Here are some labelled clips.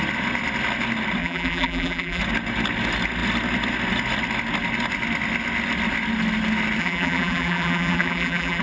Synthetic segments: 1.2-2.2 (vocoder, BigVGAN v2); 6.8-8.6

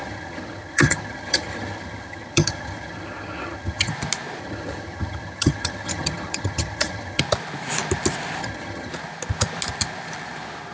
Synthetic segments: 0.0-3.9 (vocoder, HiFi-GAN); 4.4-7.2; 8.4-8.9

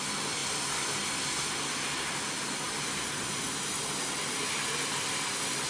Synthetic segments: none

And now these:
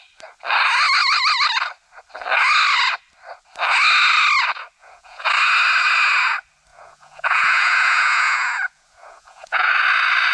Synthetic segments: 4.8-5.3 (vocoder, Vocos); 6.7-9.7

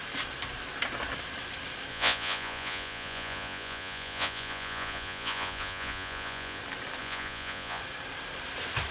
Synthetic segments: 1.9-6.6 (vocoder, Vocos); 7.0-7.8